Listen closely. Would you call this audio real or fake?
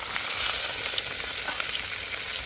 real